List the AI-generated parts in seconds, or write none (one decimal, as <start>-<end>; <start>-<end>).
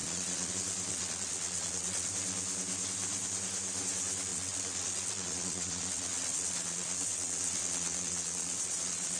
0.0-0.5; 0.9-2.1; 4.3-9.2